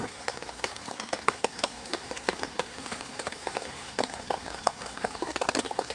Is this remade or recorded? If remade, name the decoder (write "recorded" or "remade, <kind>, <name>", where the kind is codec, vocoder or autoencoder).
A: remade, codec, SNAC